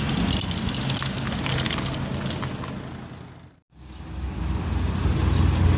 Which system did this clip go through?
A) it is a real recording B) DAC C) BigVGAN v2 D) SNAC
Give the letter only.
A